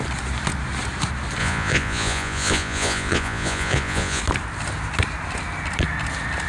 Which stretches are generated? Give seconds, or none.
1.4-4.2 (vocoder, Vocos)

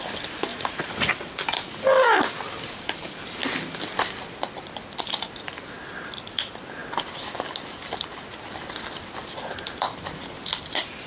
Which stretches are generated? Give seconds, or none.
0.5-1.3 (vocoder, Vocos)